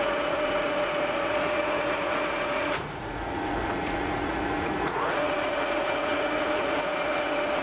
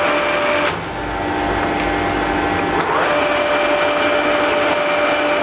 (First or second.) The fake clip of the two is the first